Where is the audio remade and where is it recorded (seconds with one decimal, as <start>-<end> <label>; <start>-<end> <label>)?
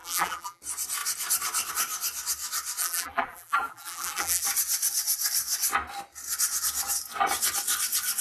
0.0-0.6 remade; 0.6-2.8 recorded; 2.8-4.4 remade; 4.4-8.2 recorded